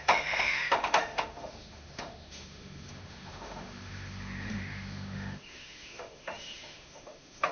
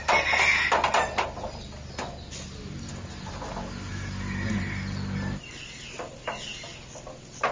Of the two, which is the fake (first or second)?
first